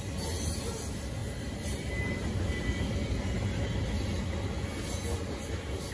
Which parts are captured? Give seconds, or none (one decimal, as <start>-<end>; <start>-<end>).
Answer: 0.0-5.9